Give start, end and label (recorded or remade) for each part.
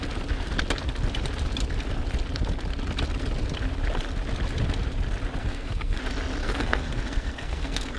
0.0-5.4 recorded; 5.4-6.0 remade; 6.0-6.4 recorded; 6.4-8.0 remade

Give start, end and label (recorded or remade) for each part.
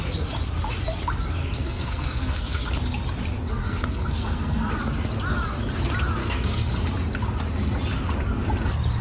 0.0-1.4 recorded; 1.4-2.7 remade; 2.7-3.6 recorded; 3.6-4.7 remade; 4.7-6.2 recorded; 6.2-6.7 remade; 6.7-9.0 recorded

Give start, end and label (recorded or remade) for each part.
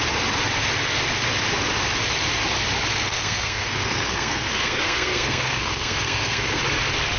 0.0-2.9 recorded; 2.9-6.6 remade; 6.6-7.2 recorded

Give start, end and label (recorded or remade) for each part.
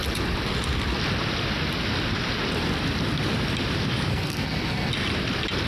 0.0-4.1 recorded; 4.1-4.9 remade; 4.9-5.7 recorded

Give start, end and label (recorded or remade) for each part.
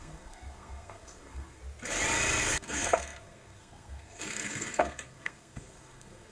0.0-1.6 remade; 1.6-2.4 recorded; 2.4-6.3 remade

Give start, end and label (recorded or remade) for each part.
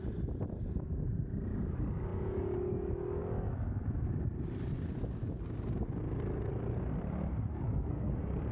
0.0-7.5 recorded; 7.5-8.1 remade; 8.1-8.5 recorded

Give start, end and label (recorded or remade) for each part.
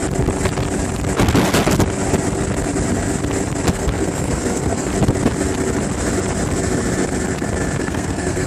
0.0-3.7 recorded; 3.7-4.9 remade; 4.9-7.8 recorded; 7.8-8.5 remade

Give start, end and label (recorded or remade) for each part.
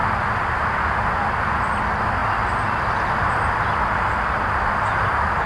0.0-5.5 recorded